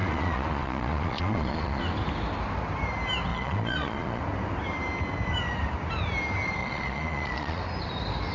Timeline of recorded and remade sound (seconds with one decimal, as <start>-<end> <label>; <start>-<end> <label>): 0.0-1.8 remade; 1.8-3.3 recorded; 3.3-4.2 remade; 4.2-6.6 recorded; 6.6-7.6 remade; 7.6-8.3 recorded